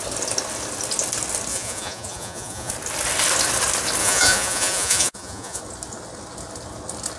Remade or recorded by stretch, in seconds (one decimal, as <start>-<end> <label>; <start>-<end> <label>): 0.0-1.5 recorded; 1.5-2.7 remade; 2.7-4.0 recorded; 4.0-5.6 remade; 5.6-7.2 recorded